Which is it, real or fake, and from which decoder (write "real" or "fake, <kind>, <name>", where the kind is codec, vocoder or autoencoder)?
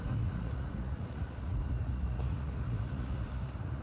fake, vocoder, Vocos